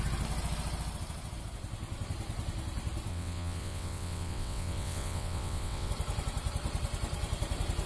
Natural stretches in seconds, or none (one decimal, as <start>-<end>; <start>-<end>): 0.0-3.1; 5.9-7.9